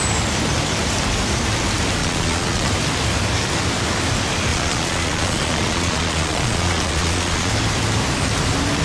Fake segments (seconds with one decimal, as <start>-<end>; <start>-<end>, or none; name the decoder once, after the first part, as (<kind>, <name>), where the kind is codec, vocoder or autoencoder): 2.0-2.7 (vocoder, Vocos); 4.5-7.5